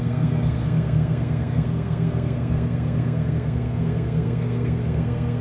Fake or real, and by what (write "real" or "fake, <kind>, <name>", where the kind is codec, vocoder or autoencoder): fake, codec, SNAC